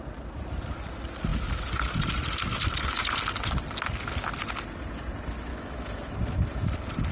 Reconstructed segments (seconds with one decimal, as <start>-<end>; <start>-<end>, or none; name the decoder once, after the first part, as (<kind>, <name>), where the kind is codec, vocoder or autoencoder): 5.5-6.1 (autoencoder, DAC-VAE)